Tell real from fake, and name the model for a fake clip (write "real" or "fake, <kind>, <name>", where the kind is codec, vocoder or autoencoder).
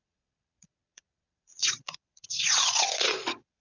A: fake, vocoder, Vocos